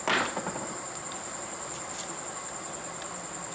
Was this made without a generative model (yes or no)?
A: yes